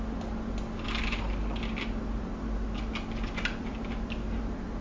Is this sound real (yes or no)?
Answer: yes